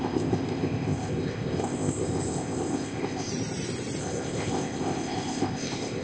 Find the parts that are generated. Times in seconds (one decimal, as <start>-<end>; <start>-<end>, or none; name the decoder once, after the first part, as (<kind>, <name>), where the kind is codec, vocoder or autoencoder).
0.0-3.3 (codec, ZipCodec); 4.0-6.0